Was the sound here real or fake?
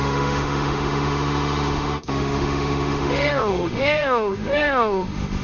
fake